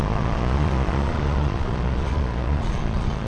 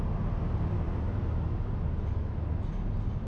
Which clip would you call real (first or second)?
second